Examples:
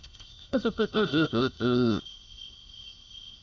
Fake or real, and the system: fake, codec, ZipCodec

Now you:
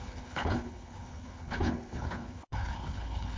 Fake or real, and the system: fake, codec, HILCodec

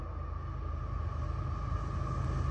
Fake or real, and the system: real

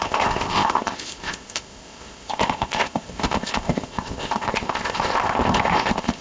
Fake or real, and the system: fake, codec, ZipCodec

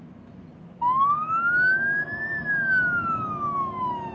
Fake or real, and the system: fake, autoencoder, DAC-VAE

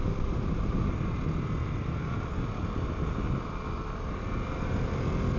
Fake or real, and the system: real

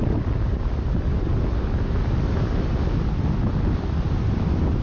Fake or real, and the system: real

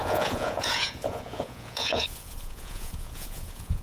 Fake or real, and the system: fake, vocoder, Vocos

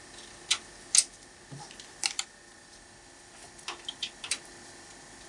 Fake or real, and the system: real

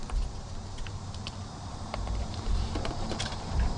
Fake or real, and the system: fake, vocoder, BigVGAN v2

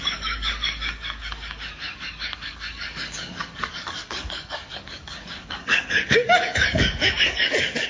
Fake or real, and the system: fake, codec, DAC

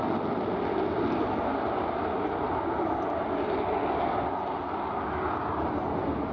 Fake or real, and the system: real